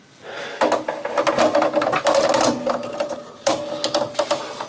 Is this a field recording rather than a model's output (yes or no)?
yes